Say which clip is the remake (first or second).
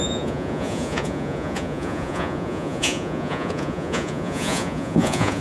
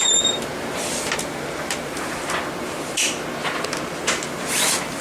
first